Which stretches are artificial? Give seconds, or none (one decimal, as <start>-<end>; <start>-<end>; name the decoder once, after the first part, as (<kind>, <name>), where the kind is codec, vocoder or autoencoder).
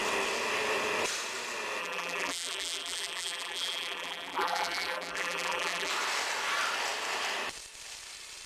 1.8-5.9 (vocoder, BigVGAN v2)